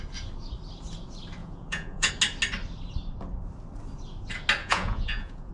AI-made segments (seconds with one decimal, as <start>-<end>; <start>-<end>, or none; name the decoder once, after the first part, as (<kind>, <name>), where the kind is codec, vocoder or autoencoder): 1.4-2.1 (vocoder, Vocos); 4.6-5.5